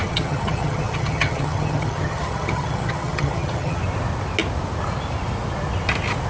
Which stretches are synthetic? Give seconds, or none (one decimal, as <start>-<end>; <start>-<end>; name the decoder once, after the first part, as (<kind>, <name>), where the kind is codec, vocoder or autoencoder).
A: 0.0-3.8 (vocoder, HiFi-GAN)